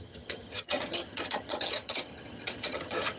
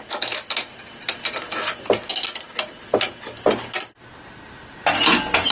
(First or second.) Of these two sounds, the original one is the second